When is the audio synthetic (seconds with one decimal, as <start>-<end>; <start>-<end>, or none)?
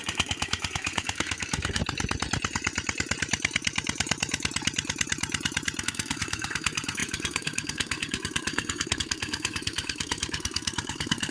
0.0-1.8; 5.8-11.3